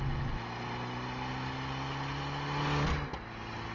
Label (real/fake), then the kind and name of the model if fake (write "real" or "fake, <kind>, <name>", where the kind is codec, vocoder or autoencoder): real